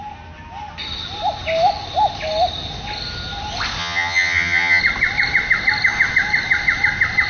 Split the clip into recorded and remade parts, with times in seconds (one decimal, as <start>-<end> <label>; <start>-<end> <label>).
0.0-3.8 recorded; 3.8-4.8 remade; 4.8-7.3 recorded